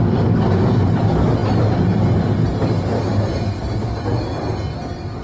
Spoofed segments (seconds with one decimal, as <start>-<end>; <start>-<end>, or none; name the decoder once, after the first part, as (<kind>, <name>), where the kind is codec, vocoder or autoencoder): none